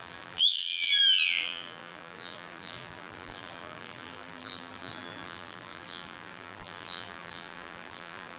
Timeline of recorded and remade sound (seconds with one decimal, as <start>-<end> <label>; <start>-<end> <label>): 0.0-8.4 remade